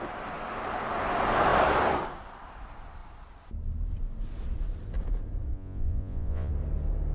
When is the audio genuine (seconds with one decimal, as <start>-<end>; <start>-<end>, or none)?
0.0-5.5; 6.5-7.1